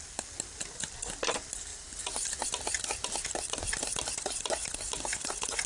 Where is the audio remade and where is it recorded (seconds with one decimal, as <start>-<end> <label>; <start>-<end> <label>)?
0.0-1.7 recorded; 1.7-3.9 remade; 3.9-5.7 recorded